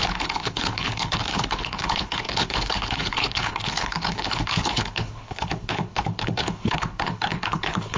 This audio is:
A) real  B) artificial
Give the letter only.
B